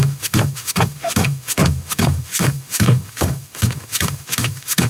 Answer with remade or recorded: remade